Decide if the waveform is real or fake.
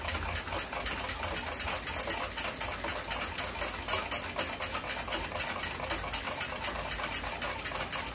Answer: real